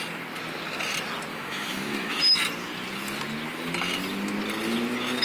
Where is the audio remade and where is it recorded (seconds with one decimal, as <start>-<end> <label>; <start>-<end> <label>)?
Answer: 0.0-1.3 recorded; 1.3-2.2 remade; 2.2-5.2 recorded